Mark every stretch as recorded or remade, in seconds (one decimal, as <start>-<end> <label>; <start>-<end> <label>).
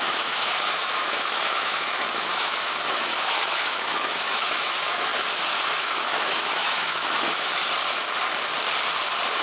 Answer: 0.0-5.1 remade; 5.1-5.8 recorded; 5.8-7.6 remade; 7.6-9.4 recorded